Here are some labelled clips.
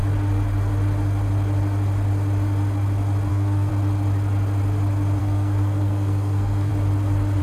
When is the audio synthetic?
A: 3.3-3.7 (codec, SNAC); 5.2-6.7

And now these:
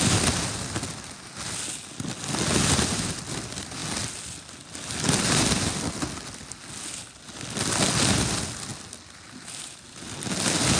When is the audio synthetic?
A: none

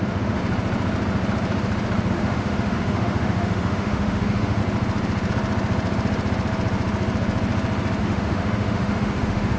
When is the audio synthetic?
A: 0.0-0.4 (autoencoder, DAC-VAE); 2.1-4.6; 8.0-9.6

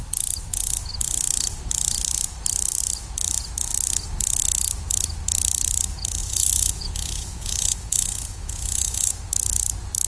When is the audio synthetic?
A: 6.2-9.1 (vocoder, Vocos)

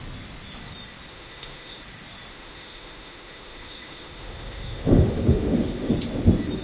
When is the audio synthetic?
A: 1.1-1.8 (autoencoder, DAC-VAE); 2.3-5.9